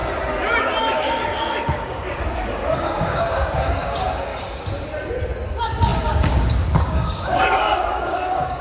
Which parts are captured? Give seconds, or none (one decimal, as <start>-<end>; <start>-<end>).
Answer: 0.0-0.8; 4.3-5.5